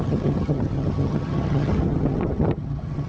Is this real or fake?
fake